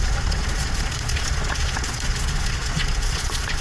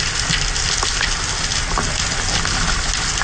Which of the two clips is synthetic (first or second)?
first